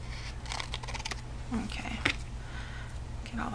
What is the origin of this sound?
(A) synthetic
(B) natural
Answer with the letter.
B